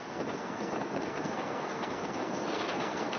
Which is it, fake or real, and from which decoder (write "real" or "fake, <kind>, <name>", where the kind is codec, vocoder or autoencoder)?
fake, codec, SNAC